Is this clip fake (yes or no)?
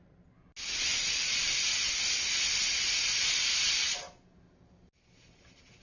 no